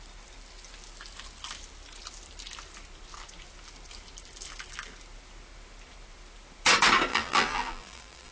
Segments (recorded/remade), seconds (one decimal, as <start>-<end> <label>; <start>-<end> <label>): 0.0-7.1 recorded; 7.1-8.3 remade